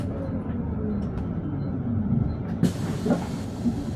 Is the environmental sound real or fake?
real